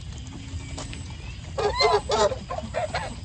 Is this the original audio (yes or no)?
yes